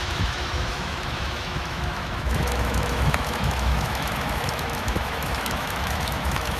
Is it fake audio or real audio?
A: fake